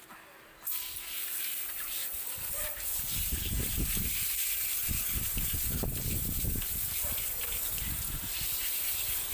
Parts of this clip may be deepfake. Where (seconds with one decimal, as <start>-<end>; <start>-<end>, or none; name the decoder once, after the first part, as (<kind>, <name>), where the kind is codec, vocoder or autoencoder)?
2.0-2.5 (vocoder, BigVGAN v2); 5.3-7.2